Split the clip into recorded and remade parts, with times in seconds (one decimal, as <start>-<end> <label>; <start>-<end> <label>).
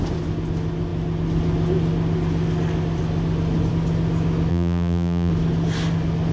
0.0-4.5 recorded; 4.5-5.3 remade; 5.3-6.3 recorded